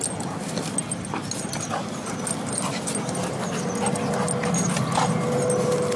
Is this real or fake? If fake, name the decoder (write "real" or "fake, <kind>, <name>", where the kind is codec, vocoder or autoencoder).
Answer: real